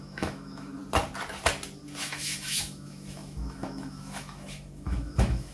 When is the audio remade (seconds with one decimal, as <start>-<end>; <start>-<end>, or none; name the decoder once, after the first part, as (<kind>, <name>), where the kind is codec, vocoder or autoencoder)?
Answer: 0.0-0.8 (autoencoder, DAC-VAE); 2.0-5.5